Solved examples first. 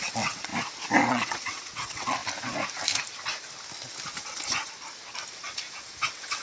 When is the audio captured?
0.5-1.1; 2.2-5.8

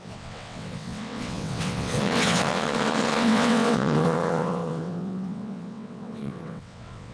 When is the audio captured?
none

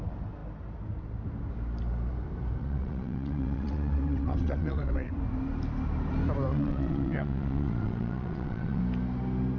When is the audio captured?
0.0-2.6; 5.1-6.5; 8.8-9.6

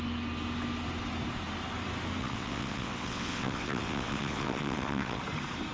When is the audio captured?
0.0-2.2; 5.2-5.7

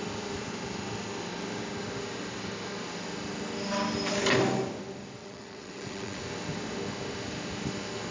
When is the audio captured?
0.0-5.2; 6.2-8.1

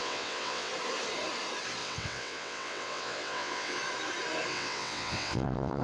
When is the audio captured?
0.7-1.8; 3.8-4.5